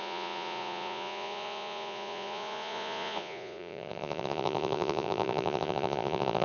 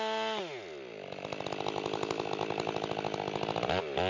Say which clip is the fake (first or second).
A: first